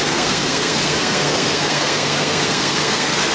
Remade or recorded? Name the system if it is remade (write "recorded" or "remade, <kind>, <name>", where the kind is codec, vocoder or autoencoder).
remade, codec, SNAC